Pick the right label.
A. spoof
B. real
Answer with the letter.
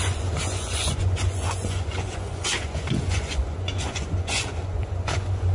A